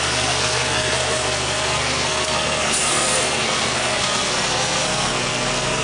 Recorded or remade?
remade